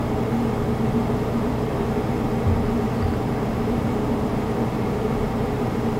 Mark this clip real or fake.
fake